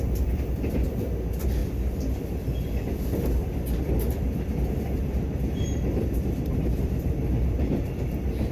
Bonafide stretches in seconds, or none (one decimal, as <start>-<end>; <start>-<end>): 0.0-1.6; 2.2-3.4; 6.9-8.5